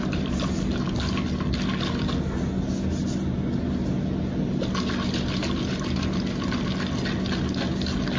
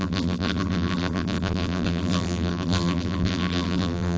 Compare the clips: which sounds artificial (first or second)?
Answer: second